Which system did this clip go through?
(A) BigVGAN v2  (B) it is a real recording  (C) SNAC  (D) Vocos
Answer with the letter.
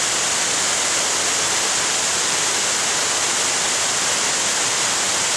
B